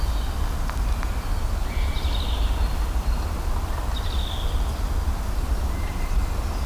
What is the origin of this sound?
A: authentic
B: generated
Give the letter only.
A